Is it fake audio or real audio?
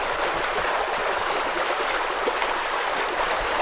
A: real